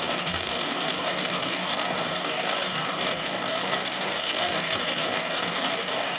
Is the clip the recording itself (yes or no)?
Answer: no